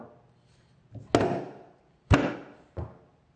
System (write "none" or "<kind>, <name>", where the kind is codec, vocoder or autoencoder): none